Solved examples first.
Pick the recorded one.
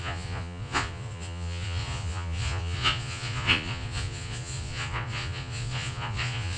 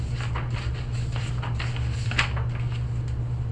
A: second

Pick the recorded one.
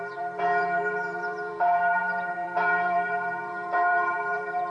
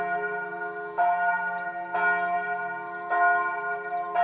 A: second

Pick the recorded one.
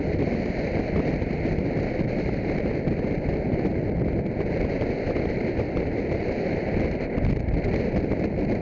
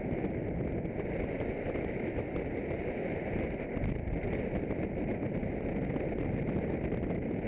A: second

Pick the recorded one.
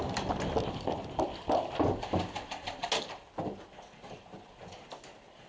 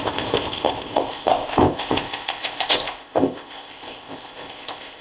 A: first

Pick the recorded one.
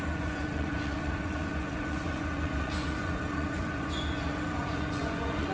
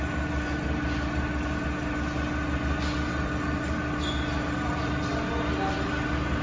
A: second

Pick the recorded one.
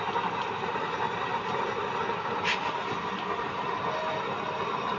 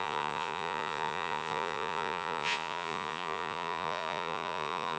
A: first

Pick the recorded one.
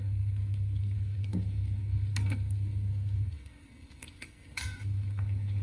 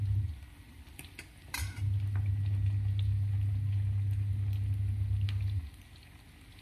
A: second